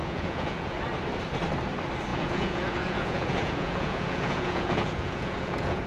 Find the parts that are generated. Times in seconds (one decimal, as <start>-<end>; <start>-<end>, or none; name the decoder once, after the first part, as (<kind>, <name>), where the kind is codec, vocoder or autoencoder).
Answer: 0.0-0.8 (vocoder, Vocos); 2.1-5.9